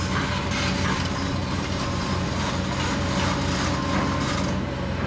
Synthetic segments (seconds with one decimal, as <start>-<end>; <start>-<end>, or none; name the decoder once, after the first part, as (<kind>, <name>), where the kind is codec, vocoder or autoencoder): none